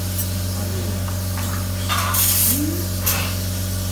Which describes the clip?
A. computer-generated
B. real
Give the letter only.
B